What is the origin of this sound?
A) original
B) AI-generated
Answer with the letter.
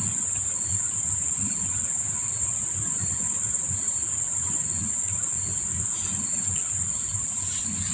B